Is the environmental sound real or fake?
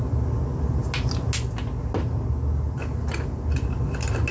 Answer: real